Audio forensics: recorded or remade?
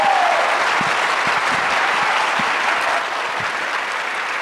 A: recorded